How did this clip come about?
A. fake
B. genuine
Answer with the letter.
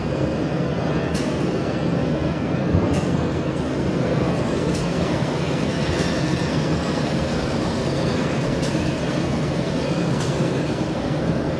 A